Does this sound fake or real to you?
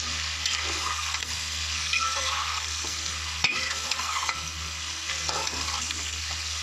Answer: fake